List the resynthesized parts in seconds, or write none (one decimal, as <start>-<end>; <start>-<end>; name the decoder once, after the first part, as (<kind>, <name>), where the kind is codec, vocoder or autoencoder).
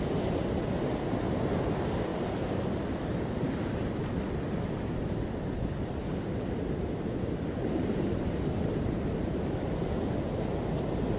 none